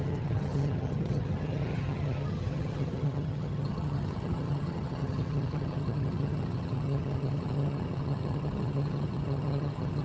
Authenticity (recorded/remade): remade